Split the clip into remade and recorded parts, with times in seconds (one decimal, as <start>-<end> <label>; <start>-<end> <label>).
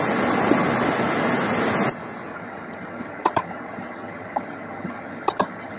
0.0-2.3 recorded; 2.3-5.8 remade